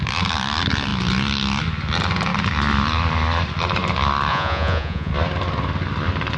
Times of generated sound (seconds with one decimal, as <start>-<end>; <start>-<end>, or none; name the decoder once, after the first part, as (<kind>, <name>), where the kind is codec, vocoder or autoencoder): 4.3-5.1 (vocoder, Vocos)